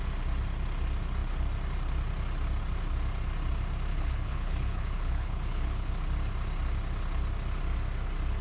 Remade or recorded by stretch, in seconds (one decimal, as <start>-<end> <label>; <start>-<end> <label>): 0.0-3.9 recorded; 3.9-5.9 remade; 5.9-8.4 recorded